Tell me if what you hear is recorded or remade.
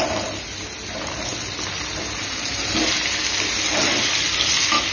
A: recorded